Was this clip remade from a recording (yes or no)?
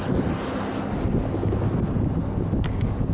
no